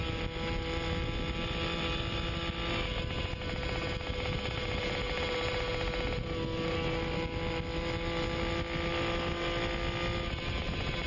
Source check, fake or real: real